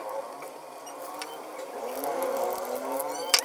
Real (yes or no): yes